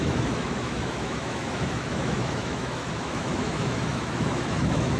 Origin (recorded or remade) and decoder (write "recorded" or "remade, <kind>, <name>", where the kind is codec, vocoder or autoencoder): remade, autoencoder, DAC-VAE